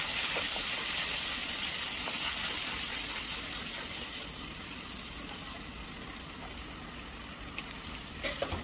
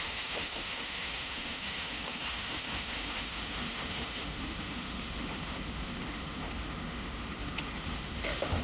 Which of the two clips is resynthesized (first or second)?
second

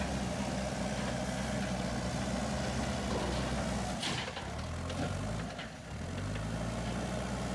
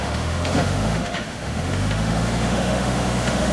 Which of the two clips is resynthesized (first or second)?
second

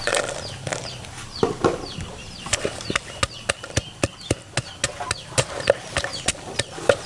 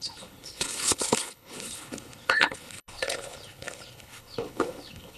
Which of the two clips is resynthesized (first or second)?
second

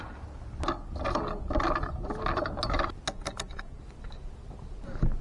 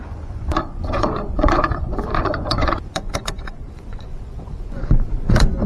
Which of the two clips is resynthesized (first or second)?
second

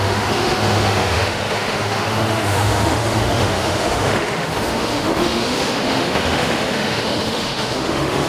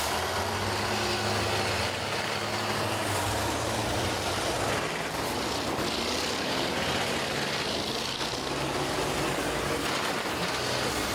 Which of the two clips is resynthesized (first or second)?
first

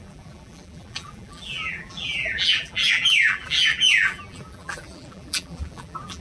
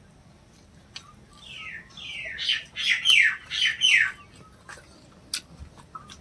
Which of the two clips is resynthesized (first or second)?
first